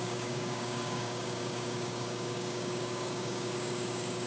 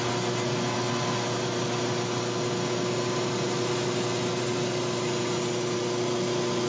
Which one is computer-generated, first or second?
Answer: first